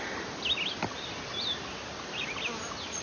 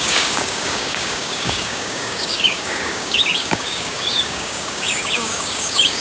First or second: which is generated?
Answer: second